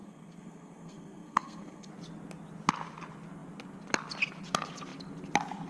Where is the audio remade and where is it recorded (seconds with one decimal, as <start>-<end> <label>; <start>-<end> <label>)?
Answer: 0.0-1.9 remade; 1.9-5.7 recorded